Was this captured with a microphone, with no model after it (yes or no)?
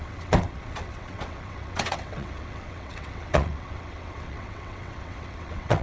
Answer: no